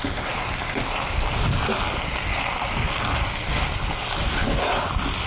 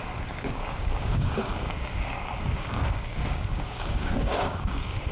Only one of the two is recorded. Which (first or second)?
first